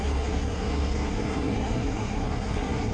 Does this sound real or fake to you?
fake